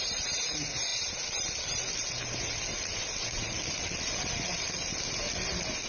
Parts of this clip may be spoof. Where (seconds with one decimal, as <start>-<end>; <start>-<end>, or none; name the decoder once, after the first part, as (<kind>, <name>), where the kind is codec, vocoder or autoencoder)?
none